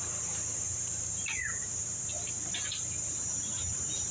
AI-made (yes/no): yes